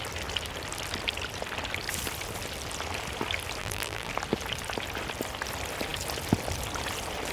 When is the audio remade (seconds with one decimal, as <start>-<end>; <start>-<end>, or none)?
3.6-4.1